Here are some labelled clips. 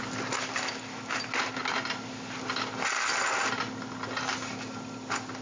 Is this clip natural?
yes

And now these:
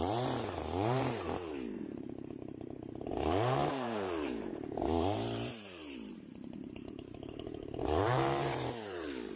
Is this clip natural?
no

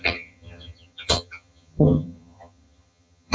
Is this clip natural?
no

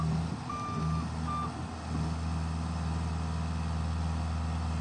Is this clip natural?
yes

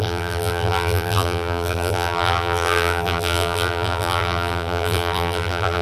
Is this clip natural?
no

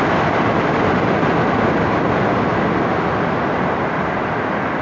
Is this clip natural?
yes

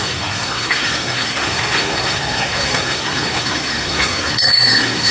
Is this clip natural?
no